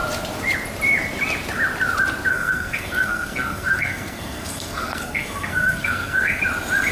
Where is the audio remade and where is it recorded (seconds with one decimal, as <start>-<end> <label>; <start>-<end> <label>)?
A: 0.0-2.3 recorded; 2.3-6.4 remade; 6.4-6.9 recorded